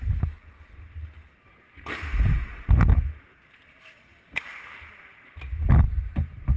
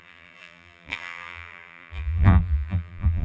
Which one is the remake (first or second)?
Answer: second